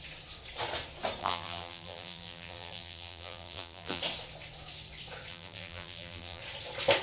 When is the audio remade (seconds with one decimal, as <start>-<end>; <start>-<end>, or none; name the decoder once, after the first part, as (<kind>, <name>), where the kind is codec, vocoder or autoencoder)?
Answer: 1.2-4.0 (vocoder, BigVGAN v2); 5.3-6.4